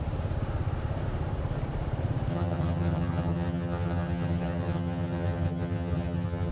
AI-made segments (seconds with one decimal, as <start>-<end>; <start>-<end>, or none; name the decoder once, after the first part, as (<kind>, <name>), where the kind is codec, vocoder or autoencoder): 2.3-6.5 (vocoder, HiFi-GAN)